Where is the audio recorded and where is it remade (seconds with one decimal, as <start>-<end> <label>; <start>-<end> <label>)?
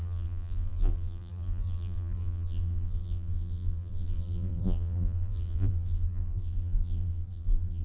0.0-7.8 remade